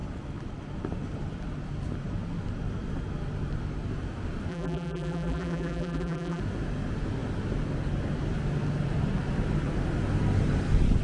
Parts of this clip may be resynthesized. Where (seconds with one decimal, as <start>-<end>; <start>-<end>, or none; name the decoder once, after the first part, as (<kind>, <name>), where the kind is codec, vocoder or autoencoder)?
4.5-6.4 (vocoder, BigVGAN v2)